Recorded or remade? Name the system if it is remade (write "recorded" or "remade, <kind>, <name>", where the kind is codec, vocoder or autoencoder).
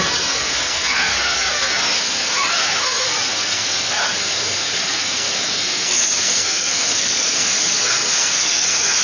remade, codec, SNAC